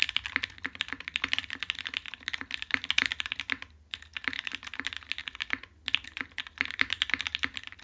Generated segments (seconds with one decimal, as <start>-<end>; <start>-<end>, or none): none